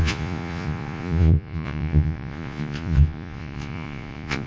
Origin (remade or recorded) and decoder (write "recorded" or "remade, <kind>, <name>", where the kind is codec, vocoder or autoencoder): remade, vocoder, Vocos